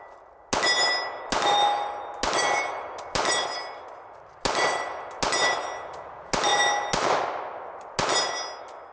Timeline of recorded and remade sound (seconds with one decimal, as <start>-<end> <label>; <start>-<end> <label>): 0.0-8.9 recorded